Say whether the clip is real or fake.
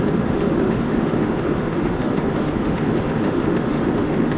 fake